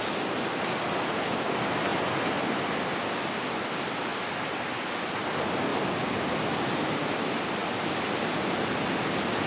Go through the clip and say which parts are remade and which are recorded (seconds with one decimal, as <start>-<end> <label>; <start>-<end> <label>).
0.0-9.5 recorded